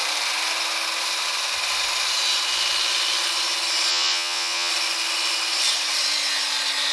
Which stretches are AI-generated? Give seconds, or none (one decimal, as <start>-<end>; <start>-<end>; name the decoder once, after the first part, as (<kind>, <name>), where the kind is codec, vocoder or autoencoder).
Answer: 3.9-4.7 (vocoder, Vocos)